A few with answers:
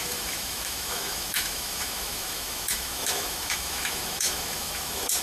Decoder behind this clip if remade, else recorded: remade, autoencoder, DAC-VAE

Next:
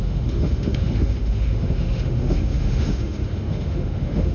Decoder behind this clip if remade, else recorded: remade, autoencoder, DAC-VAE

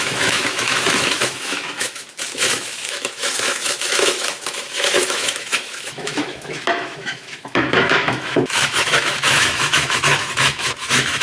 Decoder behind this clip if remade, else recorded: remade, autoencoder, DAC-VAE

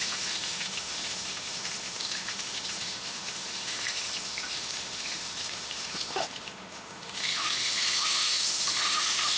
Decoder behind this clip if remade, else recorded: remade, autoencoder, DAC-VAE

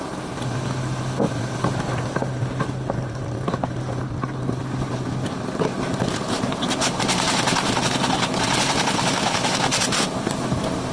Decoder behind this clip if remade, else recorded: recorded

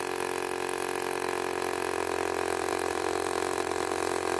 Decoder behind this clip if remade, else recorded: recorded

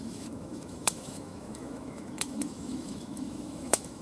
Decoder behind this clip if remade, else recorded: remade, autoencoder, DAC-VAE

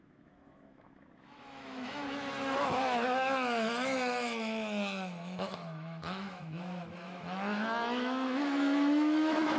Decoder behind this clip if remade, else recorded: remade, autoencoder, DAC-VAE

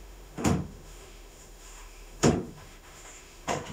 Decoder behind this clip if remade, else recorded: remade, autoencoder, DAC-VAE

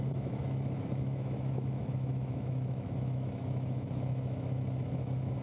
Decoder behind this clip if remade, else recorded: remade, autoencoder, DAC-VAE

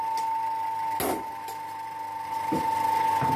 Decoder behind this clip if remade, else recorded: recorded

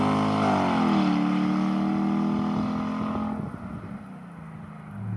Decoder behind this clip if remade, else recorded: recorded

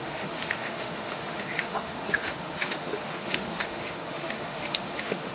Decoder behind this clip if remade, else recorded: remade, autoencoder, DAC-VAE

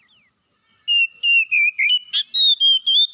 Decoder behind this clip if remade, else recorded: recorded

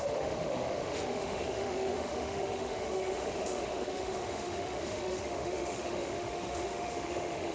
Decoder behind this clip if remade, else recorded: remade, autoencoder, DAC-VAE